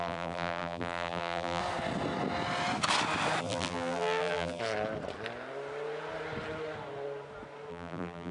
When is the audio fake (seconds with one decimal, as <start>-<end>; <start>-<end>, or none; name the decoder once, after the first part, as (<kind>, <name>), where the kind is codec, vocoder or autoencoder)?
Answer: 0.0-1.6 (vocoder, BigVGAN v2); 3.4-4.6; 7.7-8.3